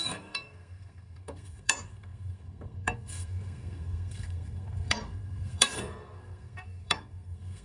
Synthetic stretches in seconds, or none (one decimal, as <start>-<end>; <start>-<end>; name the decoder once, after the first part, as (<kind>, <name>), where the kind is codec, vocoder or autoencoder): 0.0-7.6 (codec, SNAC)

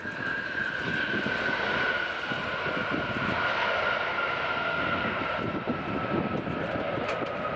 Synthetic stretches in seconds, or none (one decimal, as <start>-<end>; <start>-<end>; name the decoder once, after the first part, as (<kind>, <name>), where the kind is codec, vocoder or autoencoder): 4.6-5.2 (codec, SNAC)

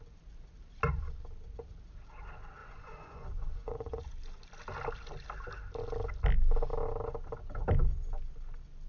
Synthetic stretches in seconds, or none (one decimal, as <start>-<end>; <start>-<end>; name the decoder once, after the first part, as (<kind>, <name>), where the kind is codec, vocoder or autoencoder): 2.6-4.1 (vocoder, Vocos)